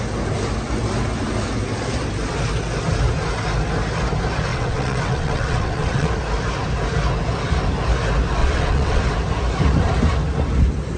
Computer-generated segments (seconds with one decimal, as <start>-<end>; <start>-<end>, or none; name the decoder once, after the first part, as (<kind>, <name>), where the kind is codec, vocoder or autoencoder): 4.5-6.1 (vocoder, WaveNeXt); 8.4-9.0